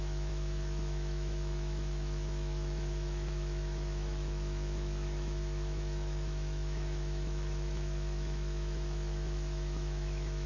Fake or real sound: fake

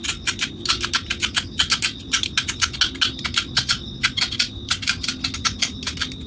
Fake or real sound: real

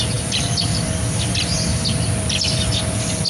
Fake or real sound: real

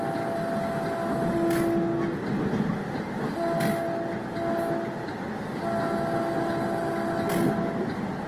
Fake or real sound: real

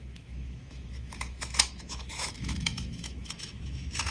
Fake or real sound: fake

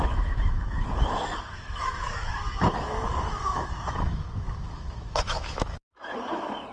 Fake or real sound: fake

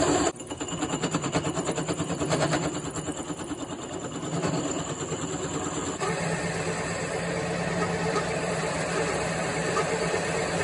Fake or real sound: real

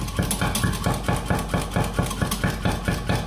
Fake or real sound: real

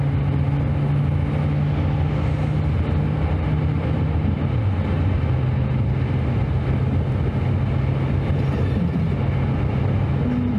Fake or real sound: real